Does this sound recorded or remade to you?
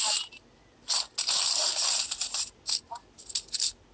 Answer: recorded